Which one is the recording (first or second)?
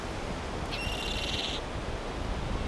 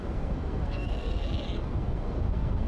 first